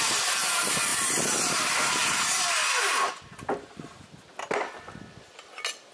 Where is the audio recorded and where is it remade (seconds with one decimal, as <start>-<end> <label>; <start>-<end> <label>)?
0.0-5.9 recorded